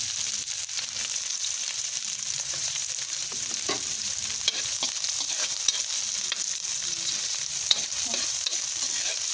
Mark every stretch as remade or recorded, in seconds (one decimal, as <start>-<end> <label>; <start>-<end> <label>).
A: 0.0-1.3 recorded; 1.3-5.9 remade; 5.9-6.7 recorded; 6.7-8.4 remade; 8.4-9.3 recorded